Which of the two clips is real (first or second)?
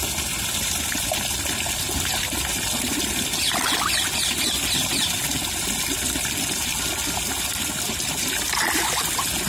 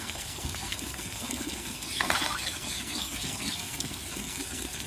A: first